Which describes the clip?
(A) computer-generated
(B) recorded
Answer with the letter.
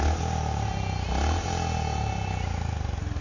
B